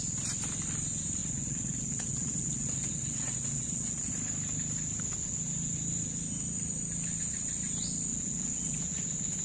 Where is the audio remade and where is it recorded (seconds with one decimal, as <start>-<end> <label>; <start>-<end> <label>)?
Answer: 0.0-1.2 recorded; 1.2-4.1 remade; 4.1-8.1 recorded; 8.1-8.8 remade; 8.8-9.4 recorded